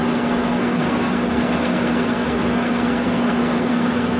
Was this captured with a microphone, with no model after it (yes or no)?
no